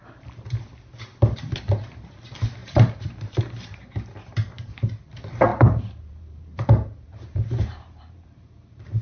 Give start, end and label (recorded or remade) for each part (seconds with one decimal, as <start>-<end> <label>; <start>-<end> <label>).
0.0-2.6 recorded; 2.6-3.4 remade; 3.4-4.3 recorded; 4.3-4.9 remade; 4.9-5.5 recorded; 5.5-9.0 remade